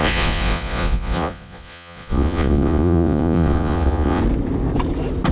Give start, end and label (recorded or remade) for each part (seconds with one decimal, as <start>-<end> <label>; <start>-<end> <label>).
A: 0.0-4.2 remade; 4.2-5.3 recorded